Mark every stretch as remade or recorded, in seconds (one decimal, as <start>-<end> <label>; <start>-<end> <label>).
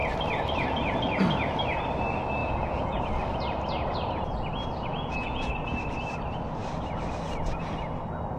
0.0-2.4 recorded; 2.4-3.0 remade; 3.0-4.9 recorded; 4.9-5.5 remade; 5.5-8.4 recorded